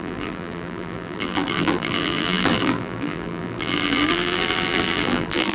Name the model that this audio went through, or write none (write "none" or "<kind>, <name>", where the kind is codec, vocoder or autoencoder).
vocoder, BigVGAN v2